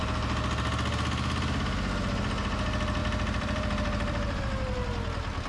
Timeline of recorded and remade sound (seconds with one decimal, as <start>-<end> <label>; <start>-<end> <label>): 0.0-3.0 recorded; 3.0-4.4 remade; 4.4-5.5 recorded